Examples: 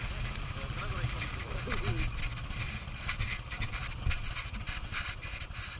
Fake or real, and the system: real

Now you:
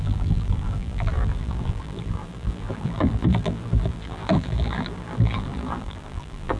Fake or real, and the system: fake, vocoder, BigVGAN v2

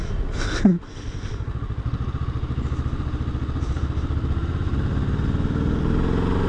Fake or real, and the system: real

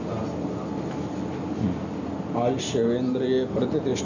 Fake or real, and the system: real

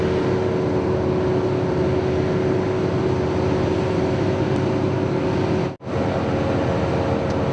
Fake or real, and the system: real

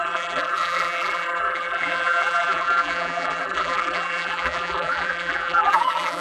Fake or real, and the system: fake, vocoder, BigVGAN v2